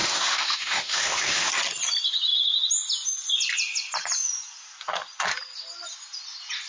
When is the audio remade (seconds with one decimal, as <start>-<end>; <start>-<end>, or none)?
0.0-1.5